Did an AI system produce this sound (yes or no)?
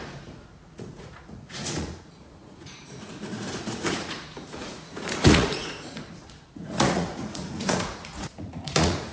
yes